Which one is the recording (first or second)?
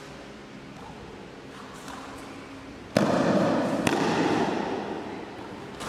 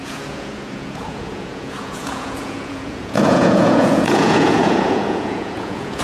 first